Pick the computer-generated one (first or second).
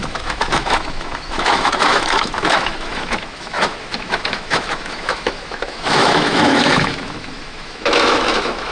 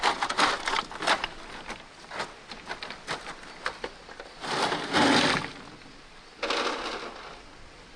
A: first